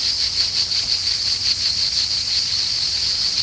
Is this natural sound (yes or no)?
yes